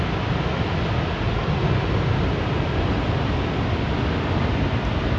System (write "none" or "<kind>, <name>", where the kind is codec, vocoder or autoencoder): none